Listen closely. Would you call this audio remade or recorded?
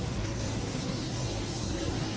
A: remade